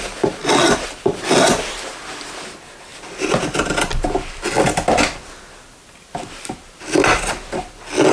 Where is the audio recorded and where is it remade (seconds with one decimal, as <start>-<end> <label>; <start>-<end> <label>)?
0.0-8.1 recorded